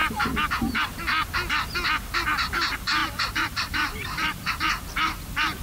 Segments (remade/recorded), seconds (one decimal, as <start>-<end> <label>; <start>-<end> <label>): 0.0-3.0 recorded; 3.0-4.7 remade; 4.7-5.6 recorded